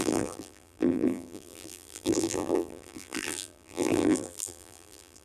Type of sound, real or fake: fake